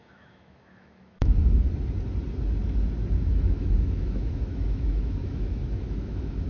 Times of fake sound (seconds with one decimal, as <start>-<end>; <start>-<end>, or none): 0.0-1.4; 3.3-6.5